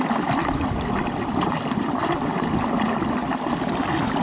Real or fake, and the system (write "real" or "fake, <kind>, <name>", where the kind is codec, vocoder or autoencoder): real